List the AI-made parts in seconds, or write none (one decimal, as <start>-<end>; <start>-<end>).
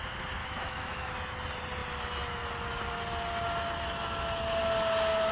0.4-1.1